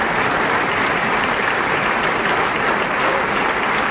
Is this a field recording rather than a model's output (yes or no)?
no